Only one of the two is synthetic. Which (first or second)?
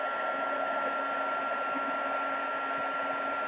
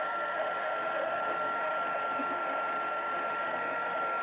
second